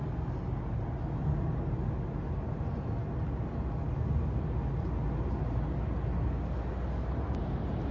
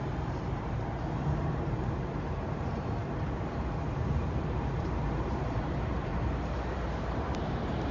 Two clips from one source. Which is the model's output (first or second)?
second